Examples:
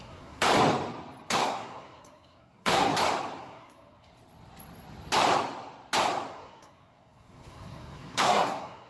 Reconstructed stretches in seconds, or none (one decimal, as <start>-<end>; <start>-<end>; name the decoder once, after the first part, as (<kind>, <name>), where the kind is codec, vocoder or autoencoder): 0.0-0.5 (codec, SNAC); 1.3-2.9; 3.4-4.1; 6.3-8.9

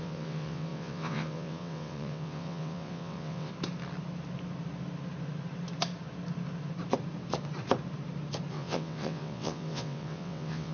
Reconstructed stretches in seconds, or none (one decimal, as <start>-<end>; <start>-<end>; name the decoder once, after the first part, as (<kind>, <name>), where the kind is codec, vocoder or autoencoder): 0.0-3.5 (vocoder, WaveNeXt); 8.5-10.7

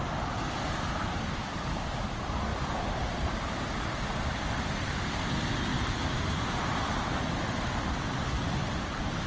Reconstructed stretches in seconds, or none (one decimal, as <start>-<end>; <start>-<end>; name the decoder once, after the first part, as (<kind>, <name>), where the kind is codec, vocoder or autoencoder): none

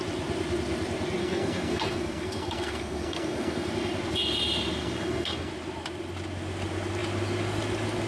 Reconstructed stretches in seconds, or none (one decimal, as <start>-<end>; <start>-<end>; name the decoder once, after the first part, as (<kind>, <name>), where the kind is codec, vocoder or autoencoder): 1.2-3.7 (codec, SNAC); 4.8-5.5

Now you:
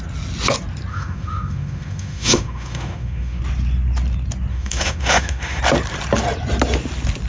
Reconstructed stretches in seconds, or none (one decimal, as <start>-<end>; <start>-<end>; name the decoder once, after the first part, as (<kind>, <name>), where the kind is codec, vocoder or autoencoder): 0.9-3.4 (autoencoder, DAC-VAE); 4.5-5.6